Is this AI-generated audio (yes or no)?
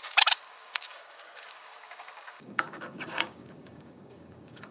yes